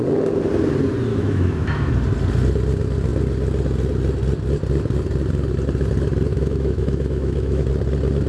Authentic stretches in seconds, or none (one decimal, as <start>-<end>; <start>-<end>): 0.0-1.1; 1.9-6.3; 7.7-8.3